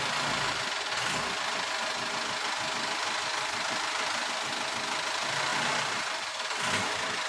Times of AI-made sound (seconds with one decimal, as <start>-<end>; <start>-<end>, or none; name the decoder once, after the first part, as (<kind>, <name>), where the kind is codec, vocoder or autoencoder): none

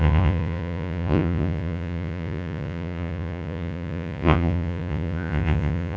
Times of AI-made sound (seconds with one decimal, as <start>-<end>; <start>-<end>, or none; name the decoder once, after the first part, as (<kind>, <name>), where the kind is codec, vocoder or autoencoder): 0.0-6.0 (vocoder, Vocos)

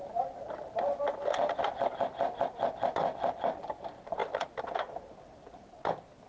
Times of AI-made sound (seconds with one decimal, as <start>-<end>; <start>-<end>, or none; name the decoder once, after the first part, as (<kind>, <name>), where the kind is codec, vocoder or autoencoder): none

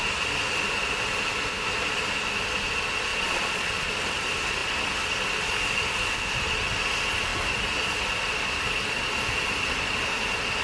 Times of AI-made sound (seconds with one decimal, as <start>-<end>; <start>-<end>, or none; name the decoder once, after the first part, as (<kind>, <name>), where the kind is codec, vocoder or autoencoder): 3.1-3.9 (vocoder, Vocos)

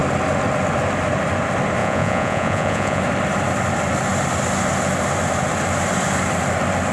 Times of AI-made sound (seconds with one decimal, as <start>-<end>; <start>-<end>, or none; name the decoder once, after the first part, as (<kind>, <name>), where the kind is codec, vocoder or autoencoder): 1.8-3.0 (vocoder, Vocos)